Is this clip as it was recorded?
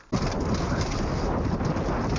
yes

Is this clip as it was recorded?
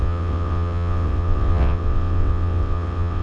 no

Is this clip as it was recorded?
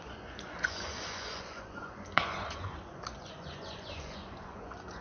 no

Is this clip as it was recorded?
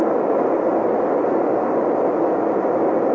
yes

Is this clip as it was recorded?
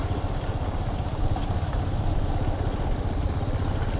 yes